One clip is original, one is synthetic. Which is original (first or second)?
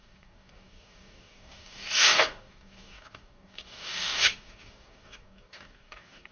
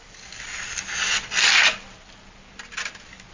second